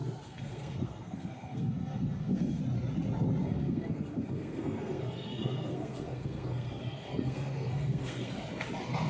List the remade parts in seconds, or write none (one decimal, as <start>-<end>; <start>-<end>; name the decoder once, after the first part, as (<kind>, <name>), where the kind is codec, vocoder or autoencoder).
0.0-2.6 (codec, SNAC); 3.4-8.3